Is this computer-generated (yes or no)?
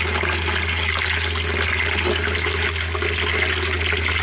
no